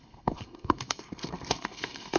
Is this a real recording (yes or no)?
no